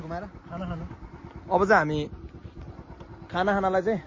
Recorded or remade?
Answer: recorded